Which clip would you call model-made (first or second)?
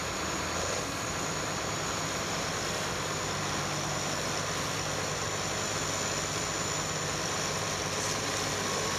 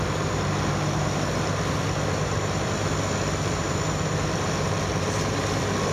second